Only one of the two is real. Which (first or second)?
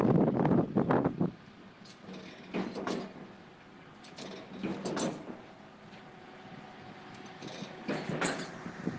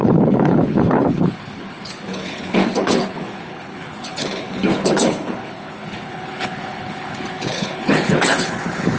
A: first